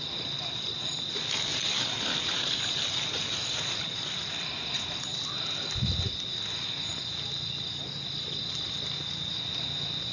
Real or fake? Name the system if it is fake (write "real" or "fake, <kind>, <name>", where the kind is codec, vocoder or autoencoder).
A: real